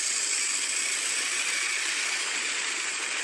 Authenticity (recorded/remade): recorded